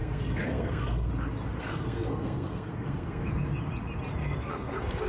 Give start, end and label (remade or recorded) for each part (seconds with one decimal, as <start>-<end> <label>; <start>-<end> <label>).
0.0-1.1 remade; 1.1-1.6 recorded; 1.6-3.3 remade; 3.3-4.2 recorded; 4.2-5.1 remade